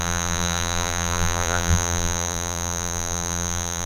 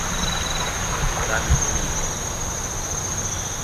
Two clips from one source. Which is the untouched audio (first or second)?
second